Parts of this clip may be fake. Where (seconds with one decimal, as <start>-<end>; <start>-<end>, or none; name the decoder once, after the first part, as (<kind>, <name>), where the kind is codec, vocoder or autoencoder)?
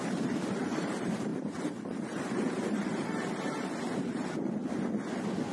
0.0-4.6 (vocoder, BigVGAN v2)